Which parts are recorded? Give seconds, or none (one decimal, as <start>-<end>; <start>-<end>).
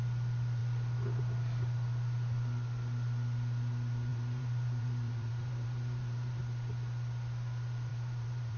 0.0-4.1; 6.4-7.9